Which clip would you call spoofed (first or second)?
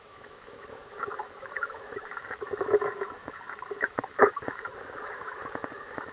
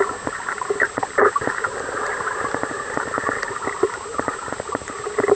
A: first